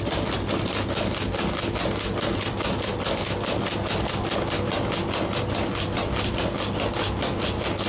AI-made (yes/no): no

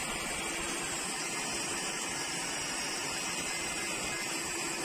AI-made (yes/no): no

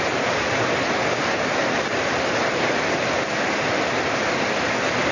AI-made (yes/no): no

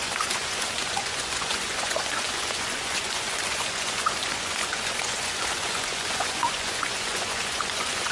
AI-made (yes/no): yes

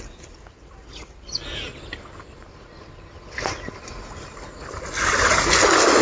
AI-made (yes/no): no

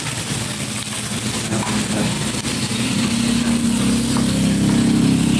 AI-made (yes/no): no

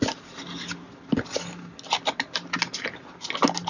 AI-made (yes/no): no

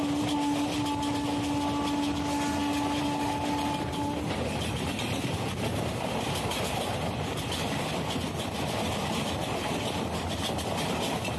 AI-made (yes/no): no